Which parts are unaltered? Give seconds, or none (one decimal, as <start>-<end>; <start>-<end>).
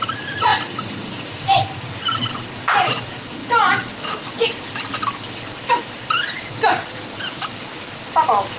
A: 0.0-8.6